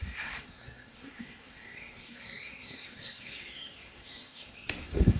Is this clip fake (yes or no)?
yes